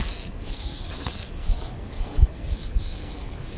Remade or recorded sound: remade